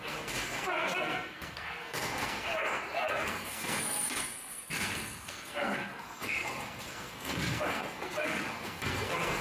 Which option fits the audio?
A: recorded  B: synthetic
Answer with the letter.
B